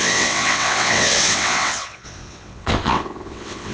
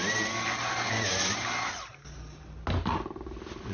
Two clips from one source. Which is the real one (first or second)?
second